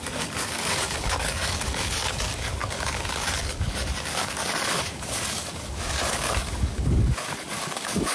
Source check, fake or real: fake